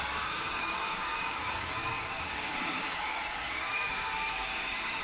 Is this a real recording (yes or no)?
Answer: no